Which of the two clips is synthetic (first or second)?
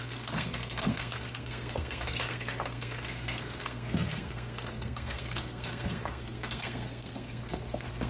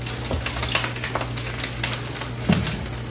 first